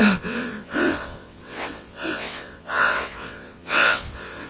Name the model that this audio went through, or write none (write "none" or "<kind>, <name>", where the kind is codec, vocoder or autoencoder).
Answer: vocoder, WaveNeXt